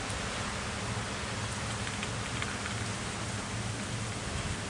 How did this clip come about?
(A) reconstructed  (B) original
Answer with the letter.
B